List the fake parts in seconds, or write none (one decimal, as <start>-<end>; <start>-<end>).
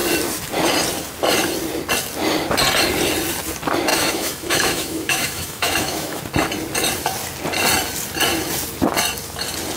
3.9-6.2